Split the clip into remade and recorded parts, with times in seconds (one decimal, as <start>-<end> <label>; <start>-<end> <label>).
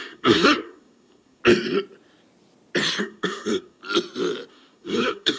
0.0-1.4 remade; 1.4-3.0 recorded; 3.0-3.8 remade; 3.8-4.5 recorded; 4.5-5.4 remade